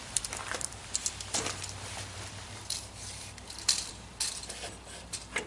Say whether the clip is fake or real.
fake